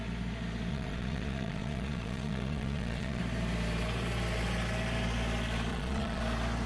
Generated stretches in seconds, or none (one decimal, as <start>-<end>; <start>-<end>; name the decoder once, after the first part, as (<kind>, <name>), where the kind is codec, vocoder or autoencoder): 0.7-3.2 (vocoder, Vocos); 5.7-6.2